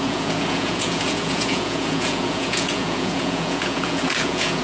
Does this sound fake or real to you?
fake